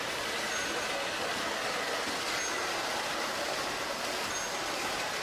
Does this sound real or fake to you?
real